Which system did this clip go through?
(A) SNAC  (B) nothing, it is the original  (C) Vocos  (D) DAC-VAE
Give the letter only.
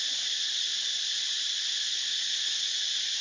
B